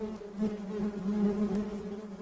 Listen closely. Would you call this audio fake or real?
real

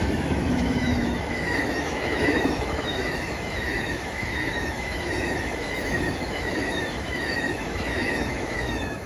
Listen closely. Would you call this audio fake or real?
fake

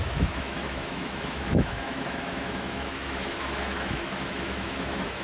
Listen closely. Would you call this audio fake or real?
fake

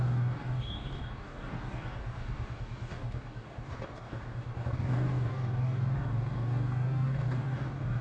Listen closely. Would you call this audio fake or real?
fake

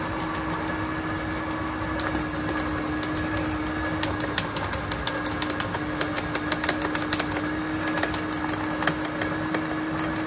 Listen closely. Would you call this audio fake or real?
real